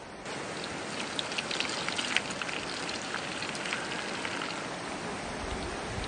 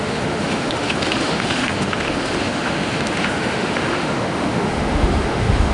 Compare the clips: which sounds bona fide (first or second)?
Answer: first